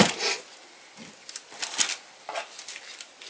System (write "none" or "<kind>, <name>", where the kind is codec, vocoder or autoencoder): none